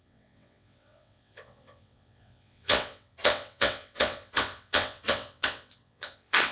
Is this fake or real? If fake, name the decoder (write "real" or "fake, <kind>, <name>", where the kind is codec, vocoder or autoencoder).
fake, vocoder, WaveNeXt